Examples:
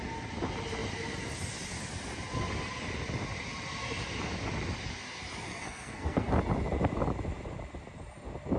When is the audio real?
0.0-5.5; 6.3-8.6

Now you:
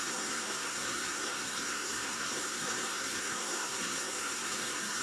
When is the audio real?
none

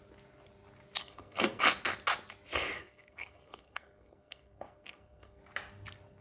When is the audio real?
0.0-1.0; 1.6-2.8; 5.4-6.2

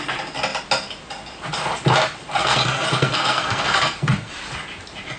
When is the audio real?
0.0-2.4; 4.3-5.2

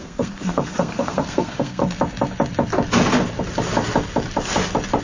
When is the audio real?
1.8-5.0

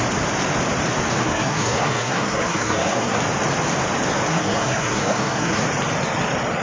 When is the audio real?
0.0-1.2; 3.2-4.3; 5.6-6.6